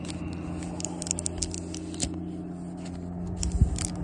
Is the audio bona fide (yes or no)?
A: yes